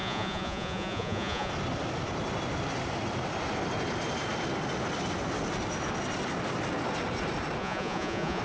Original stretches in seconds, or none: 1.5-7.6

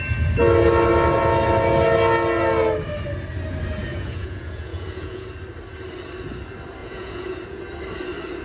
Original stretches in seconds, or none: 0.0-3.9; 5.3-6.8; 7.6-8.4

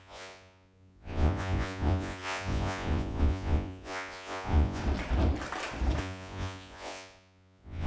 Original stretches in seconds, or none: 4.8-6.0